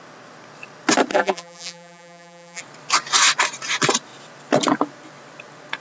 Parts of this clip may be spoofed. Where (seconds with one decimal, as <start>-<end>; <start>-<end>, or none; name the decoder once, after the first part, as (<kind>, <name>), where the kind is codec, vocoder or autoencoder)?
1.1-2.6 (vocoder, BigVGAN v2)